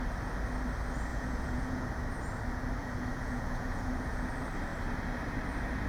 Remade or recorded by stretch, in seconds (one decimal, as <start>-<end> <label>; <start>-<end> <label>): 0.0-1.1 recorded; 1.1-1.9 remade; 1.9-2.8 recorded; 2.8-4.3 remade; 4.3-5.9 recorded